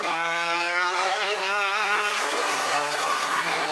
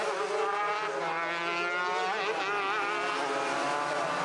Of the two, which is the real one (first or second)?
second